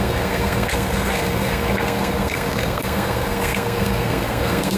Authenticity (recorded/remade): remade